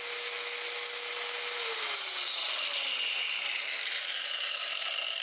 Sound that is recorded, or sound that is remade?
recorded